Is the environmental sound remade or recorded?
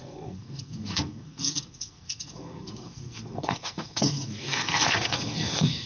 remade